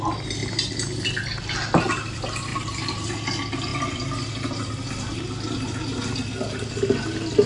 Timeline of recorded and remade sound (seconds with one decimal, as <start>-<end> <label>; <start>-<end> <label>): 0.0-2.5 recorded; 2.5-3.1 remade; 3.1-7.5 recorded